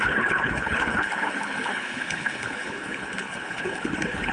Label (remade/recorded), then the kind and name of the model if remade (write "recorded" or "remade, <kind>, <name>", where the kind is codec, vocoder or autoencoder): remade, codec, HILCodec